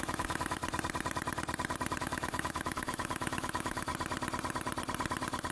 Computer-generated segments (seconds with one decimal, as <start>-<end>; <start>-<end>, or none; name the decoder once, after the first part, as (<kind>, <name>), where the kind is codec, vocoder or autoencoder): 0.0-0.6 (autoencoder, DAC-VAE); 2.0-3.9